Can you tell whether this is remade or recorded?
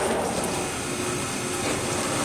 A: recorded